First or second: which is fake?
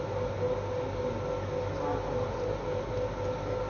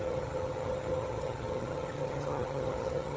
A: second